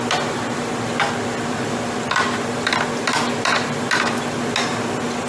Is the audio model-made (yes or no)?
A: no